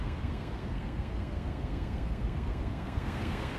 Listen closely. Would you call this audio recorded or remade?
remade